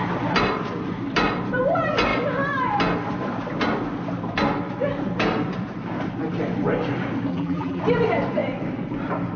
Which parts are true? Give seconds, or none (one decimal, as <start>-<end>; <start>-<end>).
0.0-7.3; 7.8-9.4